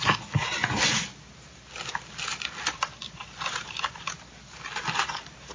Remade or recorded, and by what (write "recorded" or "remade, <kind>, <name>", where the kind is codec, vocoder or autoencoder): recorded